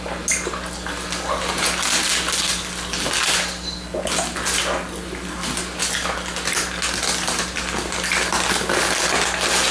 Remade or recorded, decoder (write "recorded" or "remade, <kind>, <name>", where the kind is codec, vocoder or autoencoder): recorded